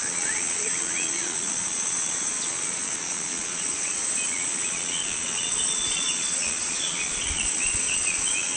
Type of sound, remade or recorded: remade